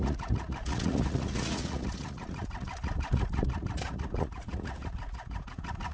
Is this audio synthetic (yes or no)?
yes